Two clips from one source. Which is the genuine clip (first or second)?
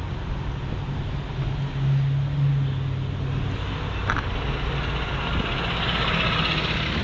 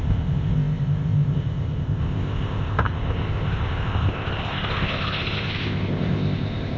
first